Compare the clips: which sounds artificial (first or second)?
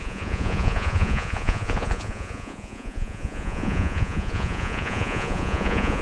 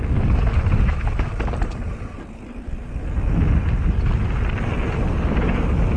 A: first